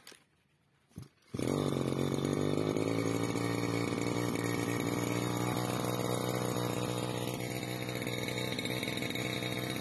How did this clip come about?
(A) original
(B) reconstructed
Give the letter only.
A